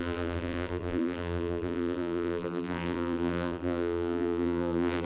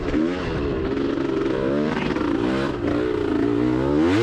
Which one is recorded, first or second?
second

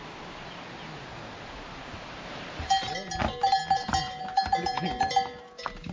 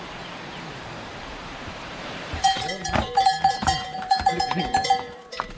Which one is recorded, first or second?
first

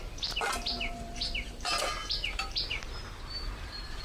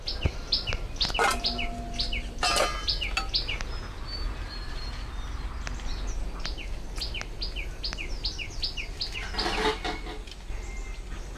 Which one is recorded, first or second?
second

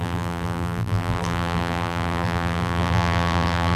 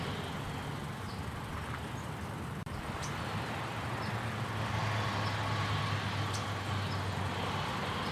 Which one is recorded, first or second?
second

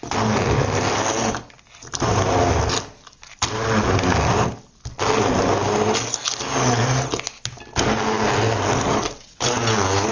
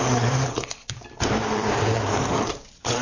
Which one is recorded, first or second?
first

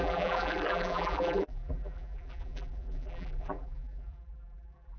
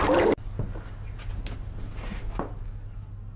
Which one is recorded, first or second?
second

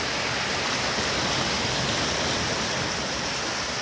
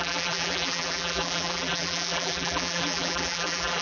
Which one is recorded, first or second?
first